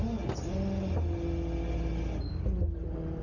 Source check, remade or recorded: recorded